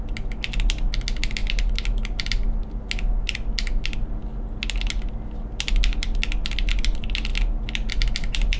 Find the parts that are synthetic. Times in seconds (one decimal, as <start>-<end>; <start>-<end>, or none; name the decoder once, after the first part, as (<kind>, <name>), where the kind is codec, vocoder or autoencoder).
none